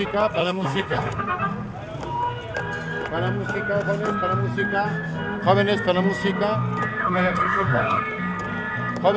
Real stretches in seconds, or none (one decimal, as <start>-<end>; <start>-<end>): 0.0-0.4; 1.2-7.0; 8.0-9.2